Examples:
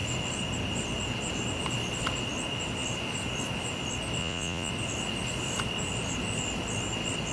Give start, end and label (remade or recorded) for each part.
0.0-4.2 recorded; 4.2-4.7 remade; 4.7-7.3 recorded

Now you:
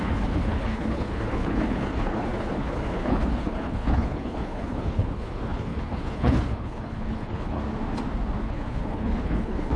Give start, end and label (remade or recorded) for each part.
0.0-7.6 remade; 7.6-8.4 recorded; 8.4-9.8 remade

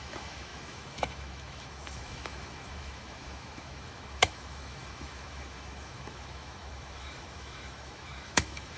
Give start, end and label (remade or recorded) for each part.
0.0-8.8 remade

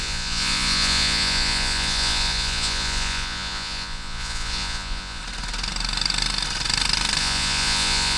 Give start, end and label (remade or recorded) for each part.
0.0-5.2 remade; 5.2-7.2 recorded; 7.2-8.2 remade

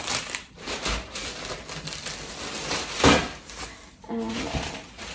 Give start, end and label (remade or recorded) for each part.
0.0-1.2 remade; 1.2-4.3 recorded; 4.3-5.1 remade